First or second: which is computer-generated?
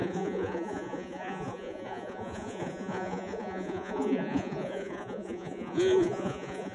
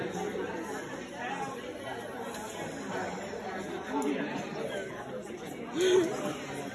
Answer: first